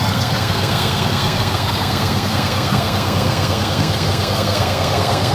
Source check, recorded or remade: remade